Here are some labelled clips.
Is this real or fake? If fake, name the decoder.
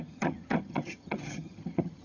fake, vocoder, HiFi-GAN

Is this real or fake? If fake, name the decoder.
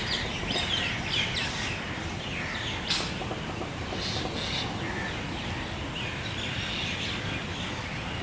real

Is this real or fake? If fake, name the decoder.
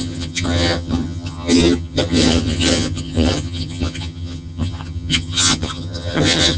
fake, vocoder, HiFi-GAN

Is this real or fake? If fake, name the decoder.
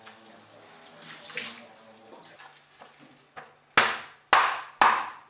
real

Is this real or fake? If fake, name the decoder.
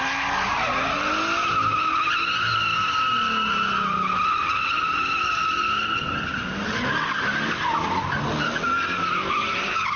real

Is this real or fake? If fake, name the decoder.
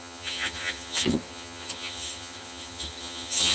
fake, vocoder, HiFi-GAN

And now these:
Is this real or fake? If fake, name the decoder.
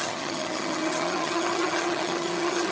fake, vocoder, HiFi-GAN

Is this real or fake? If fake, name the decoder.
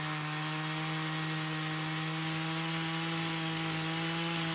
real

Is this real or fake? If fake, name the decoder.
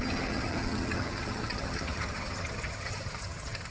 fake, vocoder, HiFi-GAN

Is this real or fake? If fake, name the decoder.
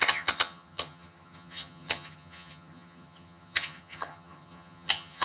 fake, vocoder, HiFi-GAN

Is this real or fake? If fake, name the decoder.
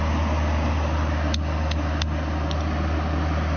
real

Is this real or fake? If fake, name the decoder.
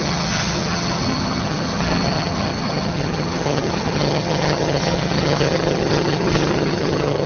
fake, vocoder, HiFi-GAN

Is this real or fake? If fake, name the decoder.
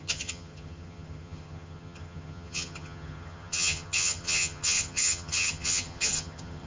fake, vocoder, HiFi-GAN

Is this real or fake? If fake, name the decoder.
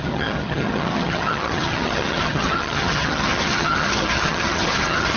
fake, vocoder, HiFi-GAN